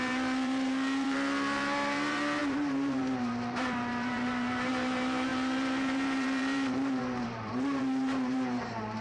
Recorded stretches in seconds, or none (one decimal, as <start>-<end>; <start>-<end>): none